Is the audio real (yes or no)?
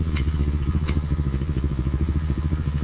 no